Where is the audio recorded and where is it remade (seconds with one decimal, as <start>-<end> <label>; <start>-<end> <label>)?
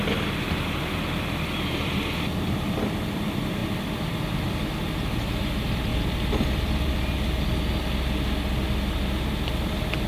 0.0-3.6 recorded; 3.6-4.5 remade; 4.5-5.9 recorded; 5.9-6.9 remade; 6.9-10.1 recorded